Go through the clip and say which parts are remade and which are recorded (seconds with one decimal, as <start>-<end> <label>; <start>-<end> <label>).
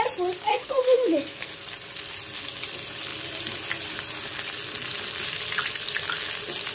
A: 0.0-0.5 recorded; 0.5-1.5 remade; 1.5-6.7 recorded